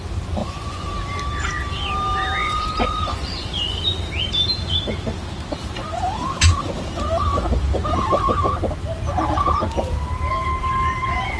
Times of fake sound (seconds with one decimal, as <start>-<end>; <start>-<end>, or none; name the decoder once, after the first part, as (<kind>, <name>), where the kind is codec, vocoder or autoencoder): 0.4-0.9 (vocoder, Vocos); 2.4-3.8